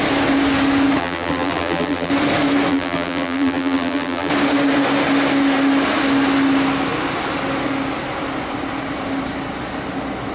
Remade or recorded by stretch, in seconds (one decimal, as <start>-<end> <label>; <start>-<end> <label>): 0.0-1.0 recorded; 1.0-2.1 remade; 2.1-2.7 recorded; 2.7-4.3 remade; 4.3-10.3 recorded